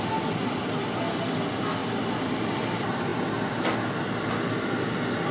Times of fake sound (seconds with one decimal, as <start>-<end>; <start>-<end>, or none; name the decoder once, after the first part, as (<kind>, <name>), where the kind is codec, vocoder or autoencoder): none